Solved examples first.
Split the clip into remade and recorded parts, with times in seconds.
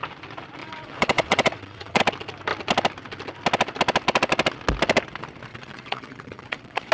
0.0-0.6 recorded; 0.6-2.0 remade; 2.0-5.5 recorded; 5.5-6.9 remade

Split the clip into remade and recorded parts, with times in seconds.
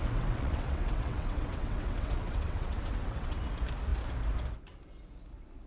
0.0-3.4 remade; 3.4-5.7 recorded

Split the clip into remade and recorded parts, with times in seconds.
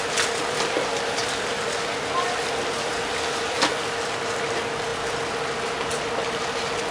0.0-6.9 recorded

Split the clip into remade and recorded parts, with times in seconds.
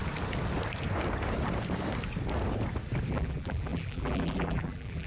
0.0-3.1 recorded; 3.1-5.1 remade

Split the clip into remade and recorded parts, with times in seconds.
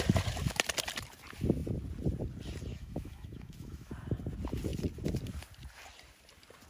0.0-2.7 recorded; 2.7-3.9 remade; 3.9-6.7 recorded